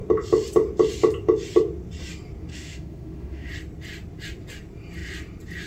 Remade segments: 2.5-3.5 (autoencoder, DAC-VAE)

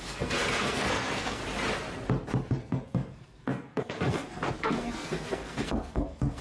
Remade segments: 0.0-1.4 (codec, SNAC); 2.5-6.4

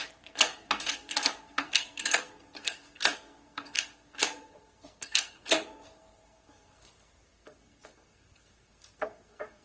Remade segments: 0.0-9.6 (codec, SNAC)

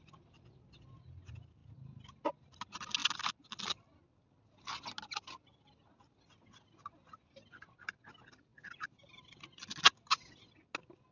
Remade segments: none

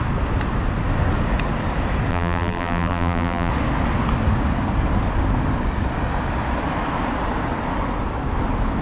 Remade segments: 2.1-3.5 (vocoder, BigVGAN v2)

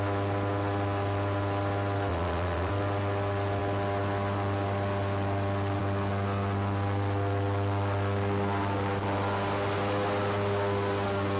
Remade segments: 2.1-2.7 (vocoder, Vocos)

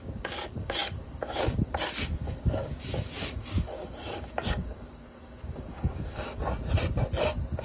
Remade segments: 0.0-6.4 (codec, DAC)

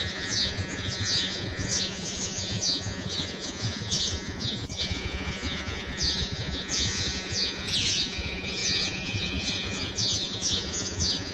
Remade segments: 0.0-11.3 (vocoder, Vocos)